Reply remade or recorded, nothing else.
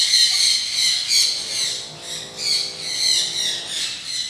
recorded